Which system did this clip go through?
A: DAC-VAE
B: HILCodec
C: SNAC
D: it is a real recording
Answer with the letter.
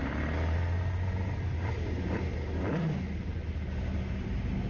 D